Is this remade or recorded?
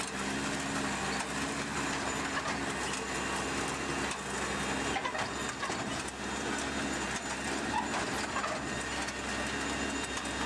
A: recorded